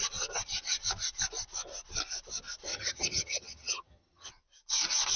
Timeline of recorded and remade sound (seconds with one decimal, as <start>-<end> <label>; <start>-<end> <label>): 0.0-2.7 recorded; 2.7-4.3 remade; 4.3-5.2 recorded